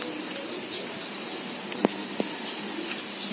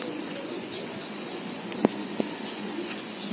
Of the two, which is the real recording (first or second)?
first